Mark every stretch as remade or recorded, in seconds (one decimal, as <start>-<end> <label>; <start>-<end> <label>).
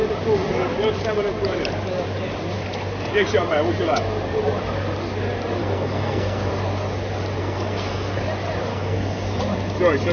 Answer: 0.0-5.6 recorded; 5.6-6.5 remade; 6.5-7.4 recorded; 7.4-8.2 remade; 8.2-8.7 recorded; 8.7-9.4 remade; 9.4-10.1 recorded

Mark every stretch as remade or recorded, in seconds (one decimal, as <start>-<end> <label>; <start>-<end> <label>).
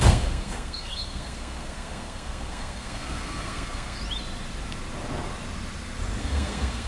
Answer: 0.0-4.0 remade; 4.0-6.2 recorded; 6.2-6.9 remade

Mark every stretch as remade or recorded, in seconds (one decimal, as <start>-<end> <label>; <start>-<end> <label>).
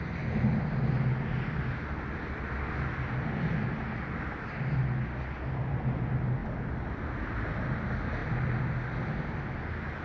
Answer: 0.0-10.0 recorded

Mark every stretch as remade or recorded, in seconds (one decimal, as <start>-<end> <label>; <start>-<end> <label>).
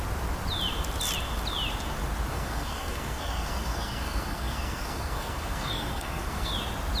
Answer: 0.0-2.3 recorded; 2.3-6.5 remade; 6.5-7.0 recorded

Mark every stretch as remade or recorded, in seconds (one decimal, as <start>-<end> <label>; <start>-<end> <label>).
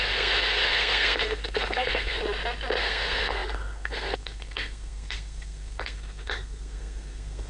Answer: 0.0-2.2 remade; 2.2-2.8 recorded; 2.8-7.5 remade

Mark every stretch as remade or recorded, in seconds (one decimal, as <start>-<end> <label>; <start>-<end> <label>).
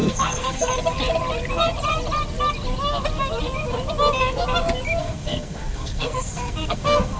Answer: 0.0-0.7 remade; 0.7-5.0 recorded; 5.0-7.2 remade